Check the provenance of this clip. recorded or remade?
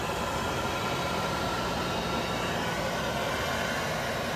recorded